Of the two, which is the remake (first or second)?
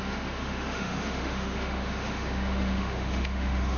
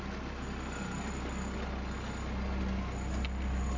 first